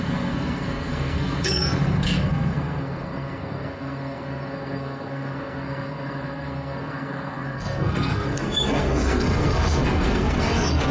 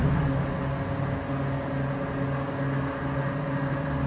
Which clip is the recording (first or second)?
second